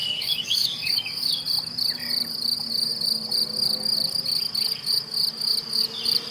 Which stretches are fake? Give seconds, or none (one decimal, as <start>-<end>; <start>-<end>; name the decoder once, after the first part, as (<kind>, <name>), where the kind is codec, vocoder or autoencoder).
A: 0.0-1.4 (codec, DAC)